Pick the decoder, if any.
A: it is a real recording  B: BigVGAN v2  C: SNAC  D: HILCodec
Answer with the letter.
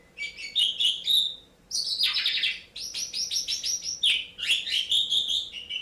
A